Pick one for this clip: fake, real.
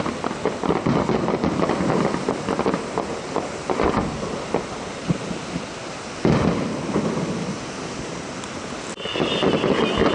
real